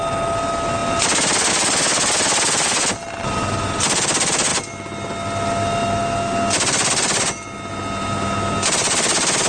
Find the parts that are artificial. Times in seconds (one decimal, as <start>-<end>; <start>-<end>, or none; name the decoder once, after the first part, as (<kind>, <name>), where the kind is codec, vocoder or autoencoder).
none

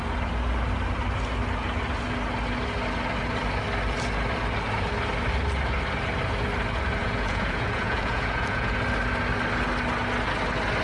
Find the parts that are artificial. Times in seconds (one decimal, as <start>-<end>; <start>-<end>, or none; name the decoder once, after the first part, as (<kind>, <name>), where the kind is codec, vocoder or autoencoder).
7.0-8.8 (vocoder, Vocos)

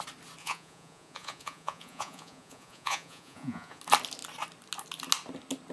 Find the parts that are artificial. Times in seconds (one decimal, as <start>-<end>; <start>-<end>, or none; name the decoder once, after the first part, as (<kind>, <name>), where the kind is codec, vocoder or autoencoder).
0.4-3.8 (vocoder, Vocos)

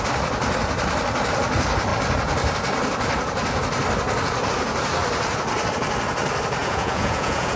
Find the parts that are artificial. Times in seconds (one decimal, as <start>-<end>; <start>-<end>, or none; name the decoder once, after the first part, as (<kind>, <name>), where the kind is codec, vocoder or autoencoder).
6.6-7.6 (vocoder, Vocos)

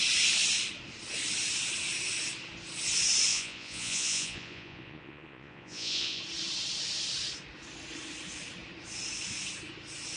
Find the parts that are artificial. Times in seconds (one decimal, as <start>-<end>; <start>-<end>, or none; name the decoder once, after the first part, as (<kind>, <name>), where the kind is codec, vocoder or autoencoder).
3.3-6.2 (vocoder, Vocos)

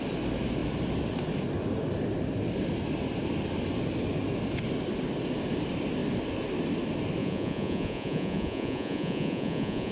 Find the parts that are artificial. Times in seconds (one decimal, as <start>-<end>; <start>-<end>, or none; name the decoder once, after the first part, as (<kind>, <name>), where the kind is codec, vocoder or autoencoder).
7.2-9.9 (vocoder, Vocos)

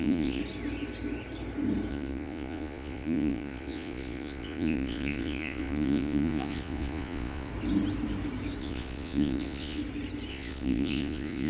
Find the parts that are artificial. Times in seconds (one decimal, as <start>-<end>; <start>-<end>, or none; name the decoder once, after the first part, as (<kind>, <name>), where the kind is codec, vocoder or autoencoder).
0.0-0.4 (vocoder, Vocos); 1.9-7.5; 8.6-9.8; 10.3-11.5